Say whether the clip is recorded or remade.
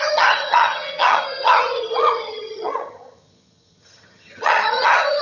remade